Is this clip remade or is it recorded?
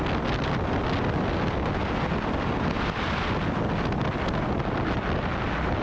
recorded